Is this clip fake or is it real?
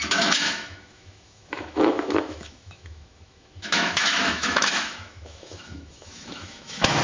fake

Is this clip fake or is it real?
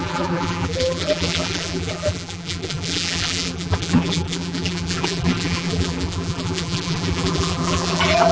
fake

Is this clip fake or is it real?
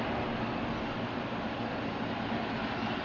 real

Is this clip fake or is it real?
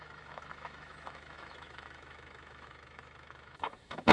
fake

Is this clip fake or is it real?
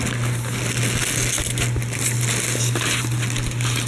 real